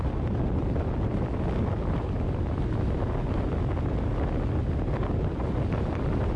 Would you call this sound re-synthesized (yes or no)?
no